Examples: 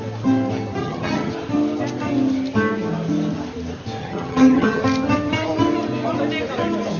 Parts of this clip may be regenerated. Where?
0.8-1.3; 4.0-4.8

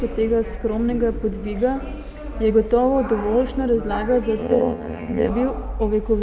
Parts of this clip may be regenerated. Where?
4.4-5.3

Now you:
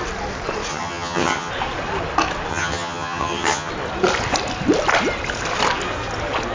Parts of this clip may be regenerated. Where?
0.7-1.5; 2.5-3.7